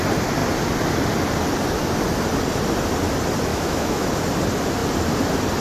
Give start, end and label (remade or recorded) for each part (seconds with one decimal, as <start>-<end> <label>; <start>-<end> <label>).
0.0-3.5 recorded; 3.5-4.1 remade; 4.1-5.6 recorded